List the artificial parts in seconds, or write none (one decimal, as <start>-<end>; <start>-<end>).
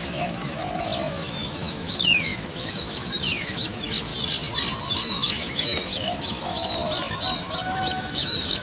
0.0-0.6; 1.1-4.1; 5.0-6.6; 7.4-8.6